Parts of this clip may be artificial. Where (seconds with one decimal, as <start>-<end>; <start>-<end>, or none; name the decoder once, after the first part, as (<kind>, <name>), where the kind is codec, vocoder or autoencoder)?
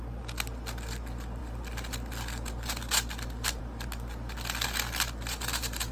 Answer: none